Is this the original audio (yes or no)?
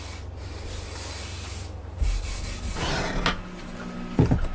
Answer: yes